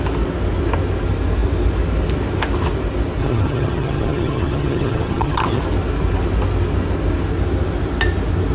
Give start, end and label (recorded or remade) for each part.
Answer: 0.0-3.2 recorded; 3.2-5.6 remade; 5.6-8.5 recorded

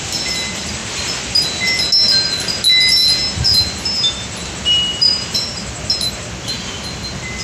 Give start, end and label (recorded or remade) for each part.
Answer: 0.0-4.9 recorded; 4.9-5.5 remade; 5.5-7.4 recorded

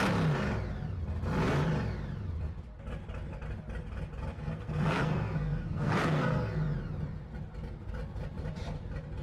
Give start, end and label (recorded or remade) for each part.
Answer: 0.0-4.3 recorded; 4.3-6.6 remade; 6.6-9.2 recorded